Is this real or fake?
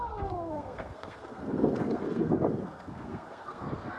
fake